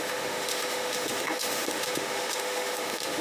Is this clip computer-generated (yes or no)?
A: yes